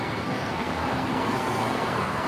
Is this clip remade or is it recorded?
remade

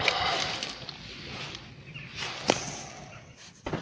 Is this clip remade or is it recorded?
recorded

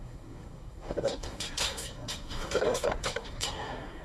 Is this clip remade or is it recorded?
remade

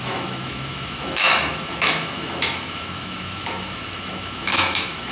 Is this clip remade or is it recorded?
remade